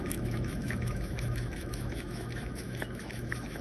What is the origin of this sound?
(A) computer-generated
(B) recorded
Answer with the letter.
A